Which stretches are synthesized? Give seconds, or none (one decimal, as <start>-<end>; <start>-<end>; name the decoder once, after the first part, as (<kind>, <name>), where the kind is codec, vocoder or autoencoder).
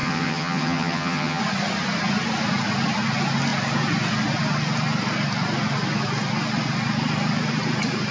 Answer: 0.0-1.4 (vocoder, HiFi-GAN)